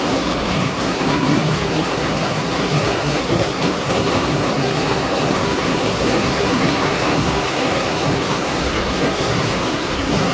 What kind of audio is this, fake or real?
fake